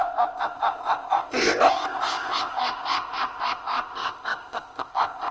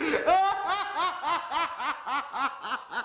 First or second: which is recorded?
second